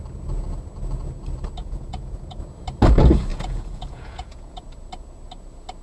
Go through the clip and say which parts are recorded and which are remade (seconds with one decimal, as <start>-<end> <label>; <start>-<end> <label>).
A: 0.0-1.6 recorded; 1.6-2.4 remade; 2.4-3.3 recorded; 3.3-4.6 remade; 4.6-5.8 recorded